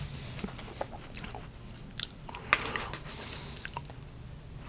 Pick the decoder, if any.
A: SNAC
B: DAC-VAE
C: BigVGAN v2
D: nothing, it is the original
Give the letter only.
D